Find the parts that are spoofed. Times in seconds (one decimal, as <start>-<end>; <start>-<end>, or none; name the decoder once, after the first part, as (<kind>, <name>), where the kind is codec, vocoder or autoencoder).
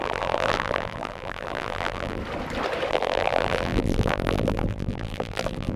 0.0-2.2 (vocoder, BigVGAN v2); 2.9-5.8